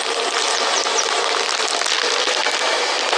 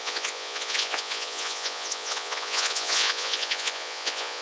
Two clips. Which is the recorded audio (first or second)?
first